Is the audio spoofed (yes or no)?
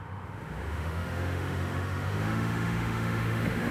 yes